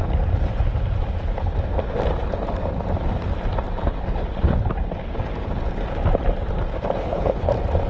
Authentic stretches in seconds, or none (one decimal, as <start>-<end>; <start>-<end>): 0.0-7.0; 7.5-7.9

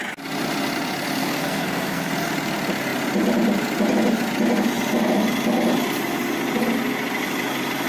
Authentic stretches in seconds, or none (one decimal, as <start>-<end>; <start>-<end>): 0.0-1.2; 2.1-7.9

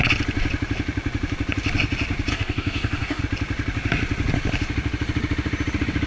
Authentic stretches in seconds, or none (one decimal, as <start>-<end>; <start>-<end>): 0.0-2.3; 3.2-6.1